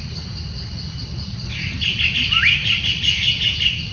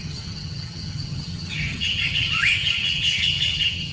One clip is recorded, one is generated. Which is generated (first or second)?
second